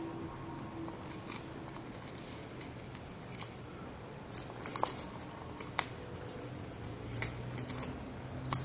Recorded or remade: recorded